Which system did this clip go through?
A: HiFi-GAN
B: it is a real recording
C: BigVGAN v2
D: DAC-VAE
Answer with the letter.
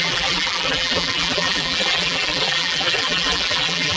C